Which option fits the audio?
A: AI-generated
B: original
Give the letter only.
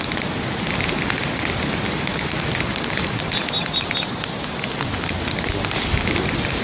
B